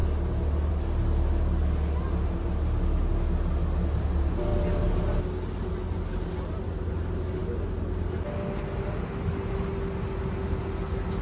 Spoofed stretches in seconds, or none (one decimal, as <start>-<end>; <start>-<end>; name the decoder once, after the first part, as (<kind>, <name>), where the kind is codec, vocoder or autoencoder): none